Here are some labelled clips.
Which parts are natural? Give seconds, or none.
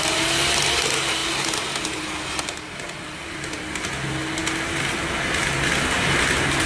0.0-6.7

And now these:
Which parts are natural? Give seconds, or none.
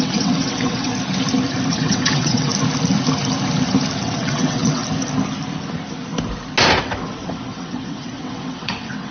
0.9-1.7; 2.5-4.0; 4.8-6.8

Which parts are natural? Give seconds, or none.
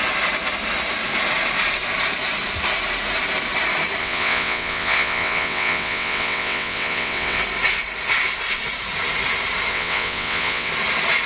0.0-4.0; 7.4-9.7; 10.7-11.3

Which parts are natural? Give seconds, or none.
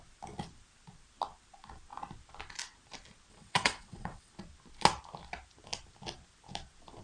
0.0-3.3; 4.3-7.0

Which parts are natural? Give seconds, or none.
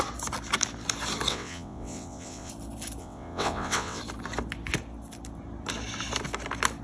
0.0-1.3; 2.5-3.0; 4.0-6.8